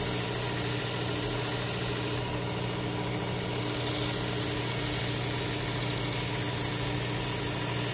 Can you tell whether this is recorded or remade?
recorded